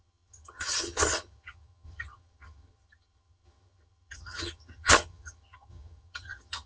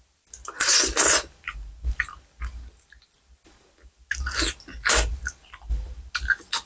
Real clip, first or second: second